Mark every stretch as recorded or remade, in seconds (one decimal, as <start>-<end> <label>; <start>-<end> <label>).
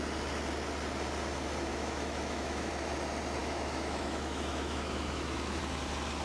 0.0-1.7 recorded; 1.7-2.7 remade; 2.7-3.4 recorded; 3.4-5.6 remade; 5.6-6.2 recorded